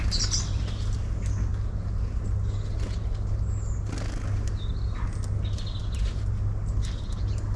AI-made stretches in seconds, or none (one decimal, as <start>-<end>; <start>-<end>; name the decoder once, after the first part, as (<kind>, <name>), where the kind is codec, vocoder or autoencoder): none